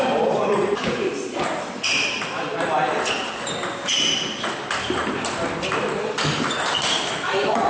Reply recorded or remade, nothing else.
recorded